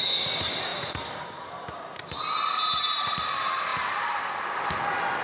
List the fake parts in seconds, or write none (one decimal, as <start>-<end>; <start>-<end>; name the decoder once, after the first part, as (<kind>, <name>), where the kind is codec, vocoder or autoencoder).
none